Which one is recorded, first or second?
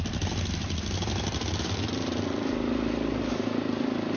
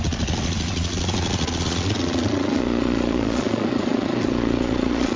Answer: first